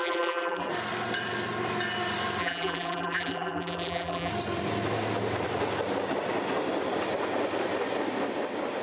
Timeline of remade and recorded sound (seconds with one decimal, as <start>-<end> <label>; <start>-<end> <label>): 0.0-0.7 remade; 0.7-2.4 recorded; 2.4-4.3 remade; 4.3-8.8 recorded